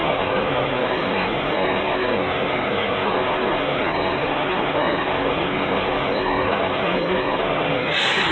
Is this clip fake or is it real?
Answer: fake